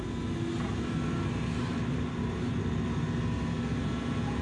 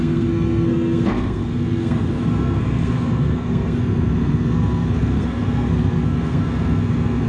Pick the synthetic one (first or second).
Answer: second